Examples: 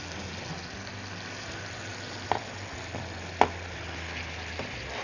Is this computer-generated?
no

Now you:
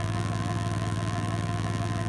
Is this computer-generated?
yes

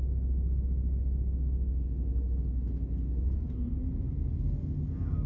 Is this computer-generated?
no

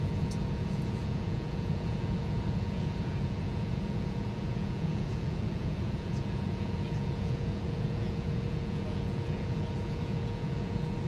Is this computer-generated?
yes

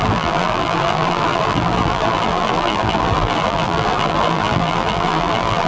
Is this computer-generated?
yes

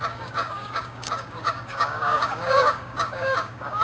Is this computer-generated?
yes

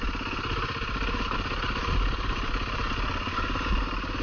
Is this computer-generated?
no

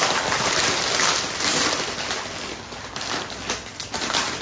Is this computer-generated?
no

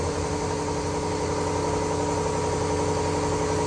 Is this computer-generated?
no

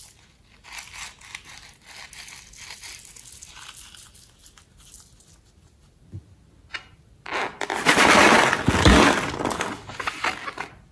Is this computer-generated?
no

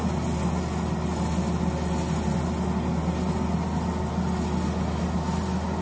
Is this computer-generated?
no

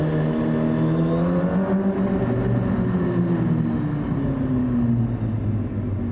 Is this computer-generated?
no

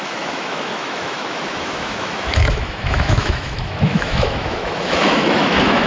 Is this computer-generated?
yes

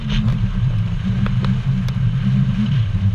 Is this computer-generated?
no